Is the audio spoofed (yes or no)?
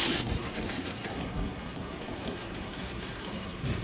yes